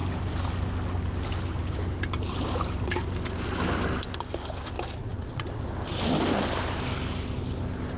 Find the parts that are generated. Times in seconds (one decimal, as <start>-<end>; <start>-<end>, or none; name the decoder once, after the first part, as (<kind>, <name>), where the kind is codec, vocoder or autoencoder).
5.0-5.6 (vocoder, Vocos)